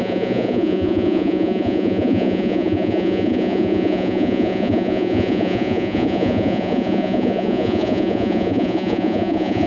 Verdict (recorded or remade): remade